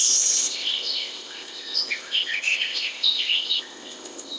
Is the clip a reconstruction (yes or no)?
yes